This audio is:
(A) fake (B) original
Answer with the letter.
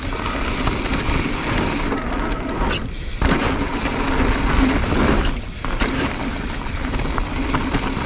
B